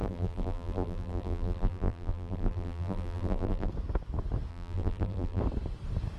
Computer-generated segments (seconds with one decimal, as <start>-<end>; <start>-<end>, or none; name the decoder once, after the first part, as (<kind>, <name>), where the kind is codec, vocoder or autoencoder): 0.0-3.7 (vocoder, BigVGAN v2); 4.5-5.4